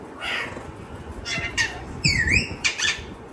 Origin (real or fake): fake